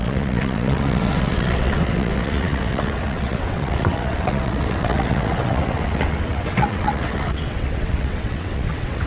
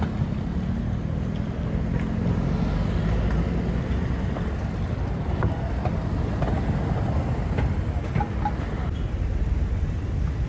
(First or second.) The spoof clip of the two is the first